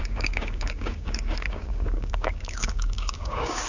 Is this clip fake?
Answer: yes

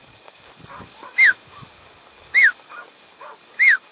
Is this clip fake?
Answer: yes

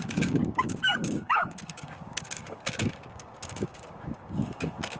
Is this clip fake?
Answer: yes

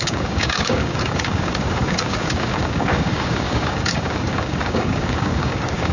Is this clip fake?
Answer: yes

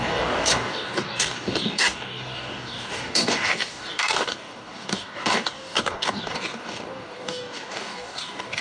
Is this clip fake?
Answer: yes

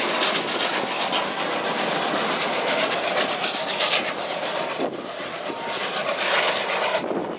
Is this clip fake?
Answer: no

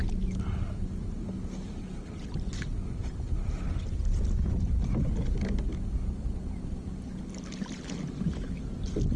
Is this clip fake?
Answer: no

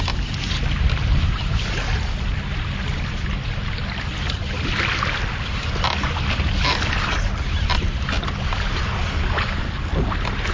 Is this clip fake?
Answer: no